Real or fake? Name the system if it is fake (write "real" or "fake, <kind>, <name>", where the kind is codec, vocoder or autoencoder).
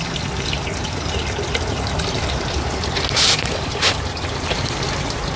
real